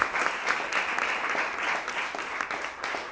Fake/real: real